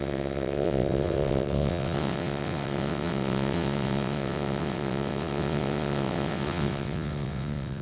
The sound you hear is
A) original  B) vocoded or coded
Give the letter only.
B